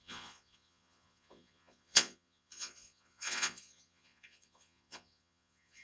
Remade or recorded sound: remade